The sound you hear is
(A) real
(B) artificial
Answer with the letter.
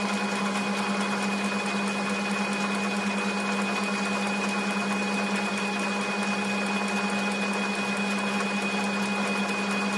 A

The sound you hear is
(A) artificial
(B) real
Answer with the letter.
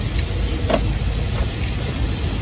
B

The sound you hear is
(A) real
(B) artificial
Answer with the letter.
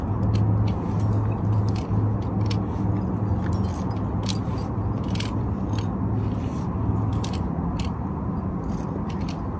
A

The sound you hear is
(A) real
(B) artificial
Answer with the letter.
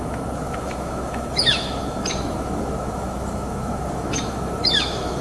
B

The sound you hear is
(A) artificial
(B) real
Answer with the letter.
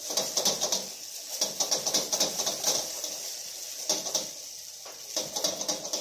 B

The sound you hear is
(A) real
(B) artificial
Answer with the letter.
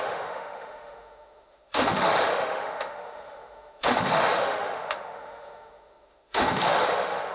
B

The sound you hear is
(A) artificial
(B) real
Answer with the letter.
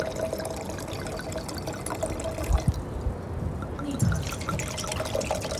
B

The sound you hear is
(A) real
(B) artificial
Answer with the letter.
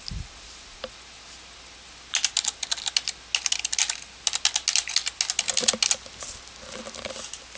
A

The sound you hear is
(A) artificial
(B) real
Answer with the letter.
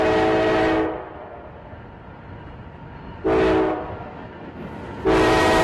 B